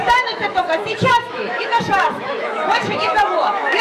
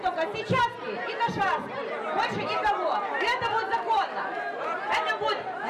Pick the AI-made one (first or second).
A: first